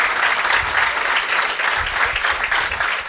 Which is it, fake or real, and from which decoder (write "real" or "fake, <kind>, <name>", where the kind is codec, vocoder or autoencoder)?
real